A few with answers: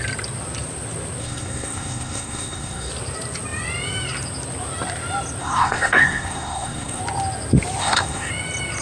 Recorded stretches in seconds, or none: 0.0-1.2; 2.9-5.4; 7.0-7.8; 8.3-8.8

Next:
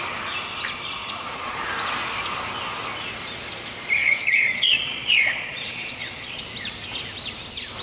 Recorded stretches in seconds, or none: 0.0-1.0; 1.5-4.0; 6.4-7.8

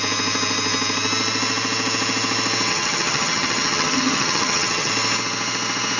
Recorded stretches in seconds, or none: 0.0-2.7; 4.9-6.0

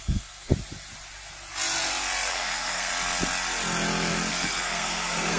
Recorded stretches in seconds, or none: 0.5-2.3; 2.9-4.3

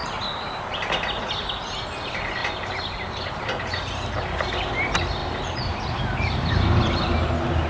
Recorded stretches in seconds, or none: 0.0-2.4; 3.3-5.2; 6.7-7.7

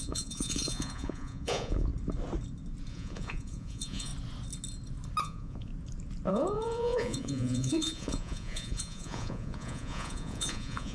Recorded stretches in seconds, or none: 1.9-2.9; 4.1-5.2; 5.7-6.3